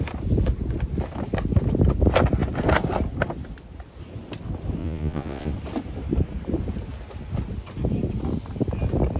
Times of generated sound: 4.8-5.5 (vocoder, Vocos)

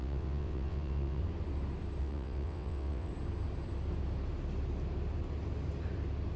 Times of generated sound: 0.0-1.2 (vocoder, WaveNeXt); 2.0-3.1

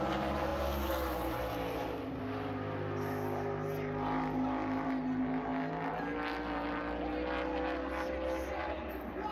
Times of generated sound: none

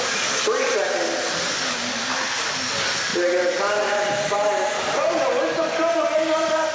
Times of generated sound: 3.1-5.2 (vocoder, BigVGAN v2)